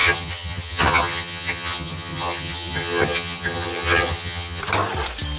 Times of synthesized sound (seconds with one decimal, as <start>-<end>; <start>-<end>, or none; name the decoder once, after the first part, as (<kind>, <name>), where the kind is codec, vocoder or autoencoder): 0.0-4.6 (vocoder, HiFi-GAN)